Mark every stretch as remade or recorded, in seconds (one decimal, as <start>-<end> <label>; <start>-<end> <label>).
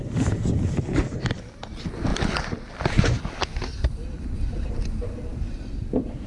0.0-2.1 remade; 2.1-4.6 recorded; 4.6-6.3 remade